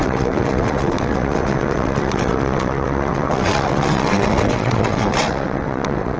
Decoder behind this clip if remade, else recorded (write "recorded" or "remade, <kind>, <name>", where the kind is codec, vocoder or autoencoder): remade, vocoder, WaveNeXt